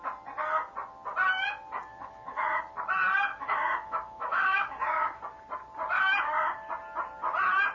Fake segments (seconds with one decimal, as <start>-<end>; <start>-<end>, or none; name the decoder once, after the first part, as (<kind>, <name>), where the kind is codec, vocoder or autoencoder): 1.9-2.6 (autoencoder, DAC-VAE); 3.3-5.2